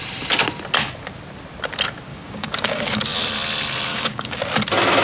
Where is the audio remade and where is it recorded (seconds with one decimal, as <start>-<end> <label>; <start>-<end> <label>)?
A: 0.0-2.1 recorded; 2.1-3.0 remade; 3.0-3.9 recorded; 3.9-4.4 remade; 4.4-5.0 recorded